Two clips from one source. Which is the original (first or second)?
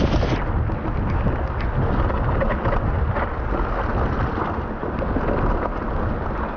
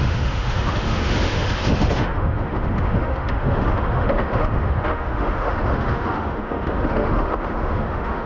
first